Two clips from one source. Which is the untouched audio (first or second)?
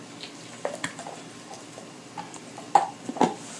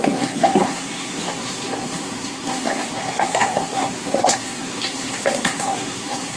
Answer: first